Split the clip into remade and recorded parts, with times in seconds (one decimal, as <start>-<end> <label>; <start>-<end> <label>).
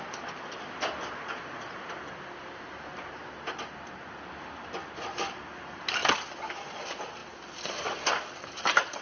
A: 0.0-9.0 recorded